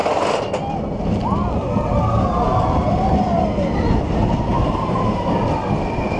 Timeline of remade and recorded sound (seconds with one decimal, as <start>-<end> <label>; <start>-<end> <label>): 0.0-4.5 recorded; 4.5-5.3 remade; 5.3-6.2 recorded